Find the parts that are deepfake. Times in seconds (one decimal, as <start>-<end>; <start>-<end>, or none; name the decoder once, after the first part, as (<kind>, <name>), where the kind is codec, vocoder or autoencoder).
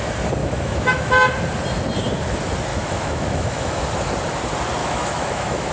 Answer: 0.4-1.1 (autoencoder, DAC-VAE); 2.7-3.8; 4.8-5.7